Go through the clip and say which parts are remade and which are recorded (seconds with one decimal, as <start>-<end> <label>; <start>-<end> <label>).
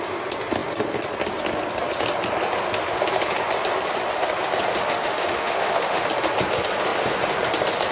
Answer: 0.0-4.7 recorded; 4.7-6.1 remade; 6.1-7.9 recorded